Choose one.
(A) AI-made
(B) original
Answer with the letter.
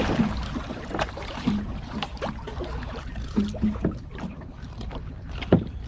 A